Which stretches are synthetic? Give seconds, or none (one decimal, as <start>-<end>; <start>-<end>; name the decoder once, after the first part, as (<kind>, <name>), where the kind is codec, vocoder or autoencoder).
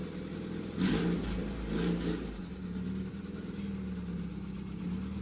0.0-3.1 (vocoder, BigVGAN v2); 4.3-5.2